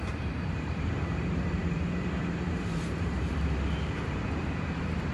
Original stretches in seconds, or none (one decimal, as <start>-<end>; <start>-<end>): none